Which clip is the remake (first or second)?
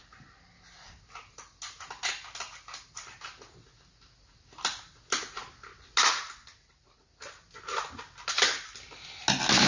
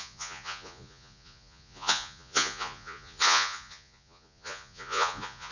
second